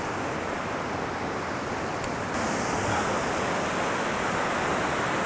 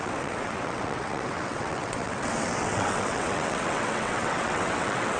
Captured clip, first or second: first